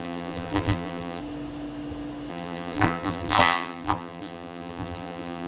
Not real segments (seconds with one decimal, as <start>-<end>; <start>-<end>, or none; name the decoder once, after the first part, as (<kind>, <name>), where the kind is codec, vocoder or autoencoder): 0.0-1.2 (vocoder, BigVGAN v2); 2.3-5.5